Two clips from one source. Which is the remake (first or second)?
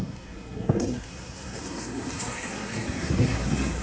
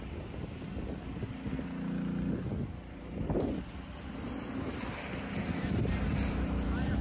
first